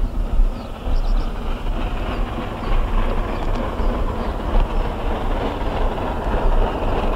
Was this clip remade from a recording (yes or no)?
no